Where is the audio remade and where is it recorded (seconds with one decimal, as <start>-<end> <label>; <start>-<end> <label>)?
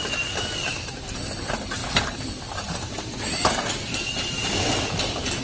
0.0-5.4 recorded